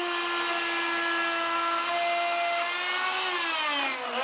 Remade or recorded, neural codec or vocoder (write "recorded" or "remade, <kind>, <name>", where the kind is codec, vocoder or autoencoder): recorded